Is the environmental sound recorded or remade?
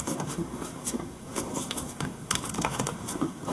remade